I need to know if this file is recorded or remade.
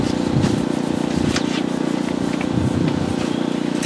recorded